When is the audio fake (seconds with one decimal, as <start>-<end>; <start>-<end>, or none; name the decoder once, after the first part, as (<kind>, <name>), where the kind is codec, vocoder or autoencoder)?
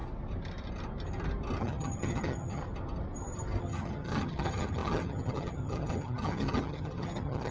1.6-2.6 (vocoder, HiFi-GAN); 3.6-7.5